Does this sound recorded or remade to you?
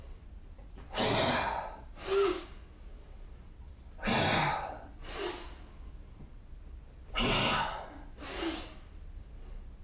recorded